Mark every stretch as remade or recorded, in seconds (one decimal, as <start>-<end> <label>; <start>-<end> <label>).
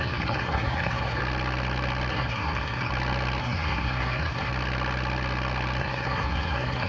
0.0-1.2 remade; 1.2-2.1 recorded; 2.1-2.9 remade; 2.9-3.4 recorded; 3.4-4.5 remade; 4.5-5.8 recorded; 5.8-6.9 remade